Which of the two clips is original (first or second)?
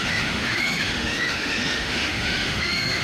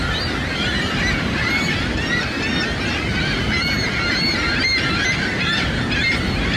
second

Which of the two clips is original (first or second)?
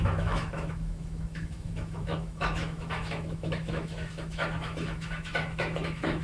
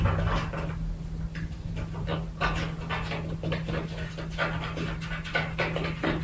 second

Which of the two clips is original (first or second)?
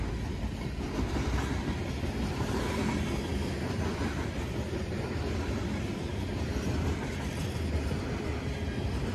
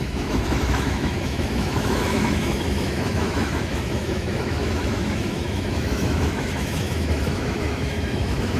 first